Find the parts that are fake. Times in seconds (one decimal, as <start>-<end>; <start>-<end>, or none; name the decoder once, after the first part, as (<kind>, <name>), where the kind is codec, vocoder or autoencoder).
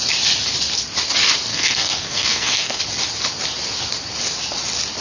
1.5-2.8 (codec, SNAC)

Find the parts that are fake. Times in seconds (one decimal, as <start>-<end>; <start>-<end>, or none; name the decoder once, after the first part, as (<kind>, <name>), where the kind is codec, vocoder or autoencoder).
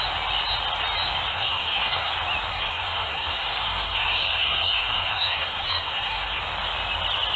1.3-2.1 (codec, SNAC); 2.5-6.4